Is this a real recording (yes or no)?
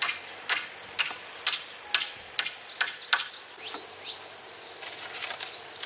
yes